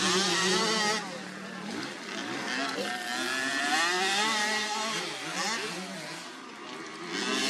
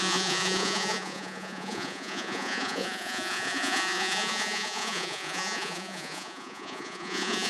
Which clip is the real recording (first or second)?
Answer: first